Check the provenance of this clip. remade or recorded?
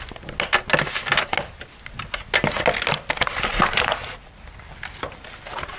recorded